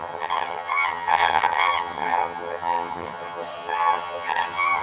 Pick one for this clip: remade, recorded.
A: remade